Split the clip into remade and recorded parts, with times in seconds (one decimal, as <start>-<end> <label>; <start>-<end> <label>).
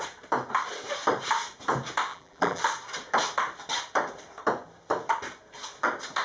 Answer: 0.0-2.1 recorded; 2.1-2.6 remade; 2.6-6.2 recorded